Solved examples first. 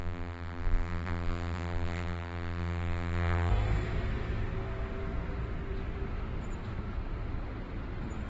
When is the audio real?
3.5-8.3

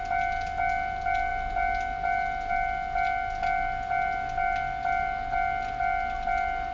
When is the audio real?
0.0-6.7